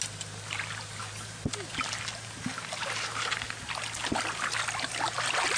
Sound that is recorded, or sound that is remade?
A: recorded